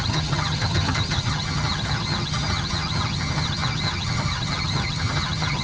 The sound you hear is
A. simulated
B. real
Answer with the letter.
A